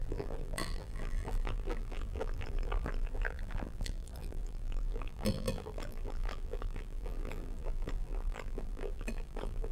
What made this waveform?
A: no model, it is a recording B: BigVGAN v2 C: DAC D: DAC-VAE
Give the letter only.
B